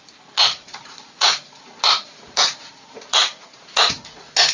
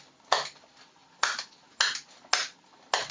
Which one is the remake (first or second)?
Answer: first